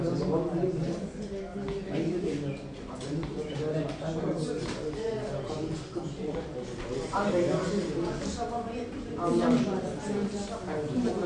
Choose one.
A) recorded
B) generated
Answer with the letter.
A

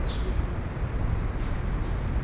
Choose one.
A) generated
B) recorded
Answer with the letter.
B